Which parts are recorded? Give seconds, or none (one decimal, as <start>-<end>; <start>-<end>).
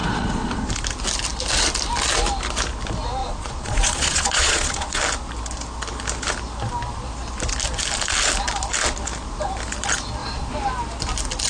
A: 0.7-3.2; 5.0-11.5